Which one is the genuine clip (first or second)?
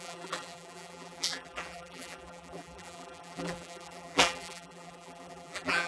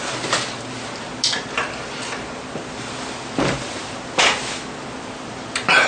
second